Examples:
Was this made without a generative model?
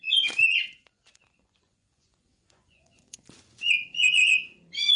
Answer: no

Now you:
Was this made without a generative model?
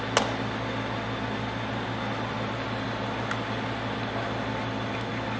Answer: yes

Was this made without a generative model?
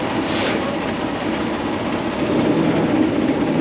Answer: yes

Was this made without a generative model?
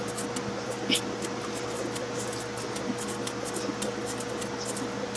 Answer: yes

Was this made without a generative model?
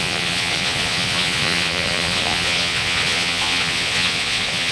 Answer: no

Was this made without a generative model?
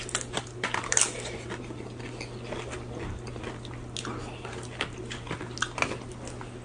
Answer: yes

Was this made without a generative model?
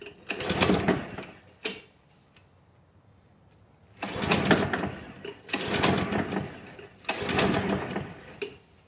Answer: yes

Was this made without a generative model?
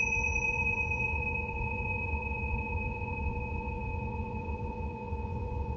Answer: no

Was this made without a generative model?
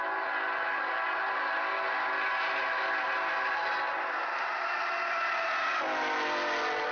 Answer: yes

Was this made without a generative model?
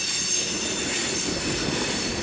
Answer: yes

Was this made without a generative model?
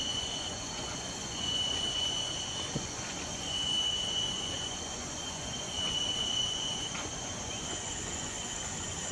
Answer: no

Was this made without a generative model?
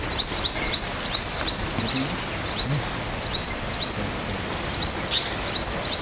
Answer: yes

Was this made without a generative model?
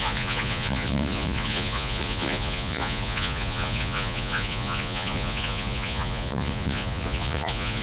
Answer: no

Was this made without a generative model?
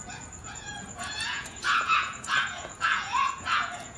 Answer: no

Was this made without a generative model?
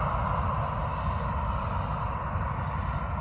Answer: yes